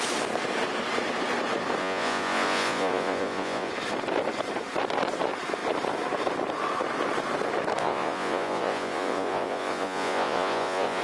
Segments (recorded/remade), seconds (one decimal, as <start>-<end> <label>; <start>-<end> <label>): 0.0-1.8 recorded; 1.8-3.7 remade; 3.7-7.8 recorded; 7.8-11.0 remade